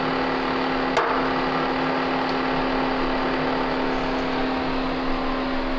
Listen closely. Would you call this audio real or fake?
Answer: real